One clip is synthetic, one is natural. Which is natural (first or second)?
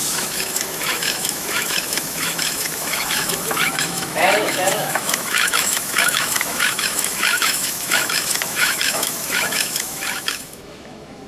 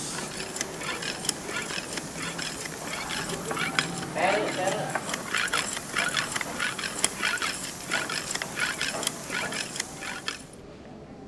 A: second